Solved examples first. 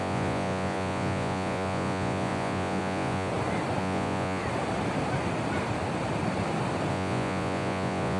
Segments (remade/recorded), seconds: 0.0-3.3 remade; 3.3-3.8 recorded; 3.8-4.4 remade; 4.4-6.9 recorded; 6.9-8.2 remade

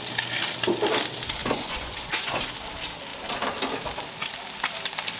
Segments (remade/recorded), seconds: 0.0-1.4 recorded; 1.4-2.4 remade; 2.4-5.2 recorded

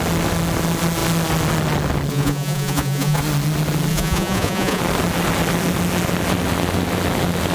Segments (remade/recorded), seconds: 0.0-2.1 recorded; 2.1-3.2 remade; 3.2-3.9 recorded; 3.9-4.8 remade; 4.8-7.5 recorded

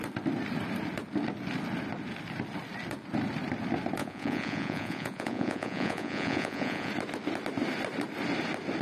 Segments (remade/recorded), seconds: 0.0-4.0 recorded; 4.0-6.9 remade; 6.9-8.8 recorded